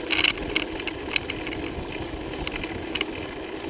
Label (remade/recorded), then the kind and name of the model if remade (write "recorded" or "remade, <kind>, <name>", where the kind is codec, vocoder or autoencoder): recorded